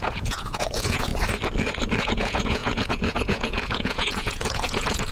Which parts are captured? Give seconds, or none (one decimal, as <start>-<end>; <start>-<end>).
1.1-2.0